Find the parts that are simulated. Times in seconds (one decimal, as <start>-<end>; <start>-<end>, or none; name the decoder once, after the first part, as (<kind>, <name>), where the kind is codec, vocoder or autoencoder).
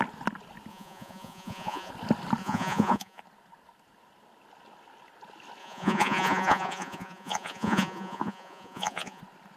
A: 0.7-1.9 (vocoder, Vocos); 2.4-3.2; 5.6-9.2